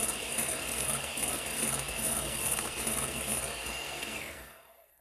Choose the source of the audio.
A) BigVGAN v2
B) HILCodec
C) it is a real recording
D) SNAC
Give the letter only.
D